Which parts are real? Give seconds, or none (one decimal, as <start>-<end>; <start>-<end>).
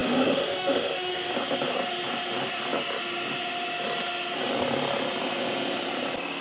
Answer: 1.3-6.4